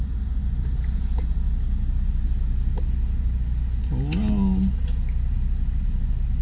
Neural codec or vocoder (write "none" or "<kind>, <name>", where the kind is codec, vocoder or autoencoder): none